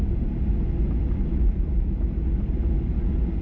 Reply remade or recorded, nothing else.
recorded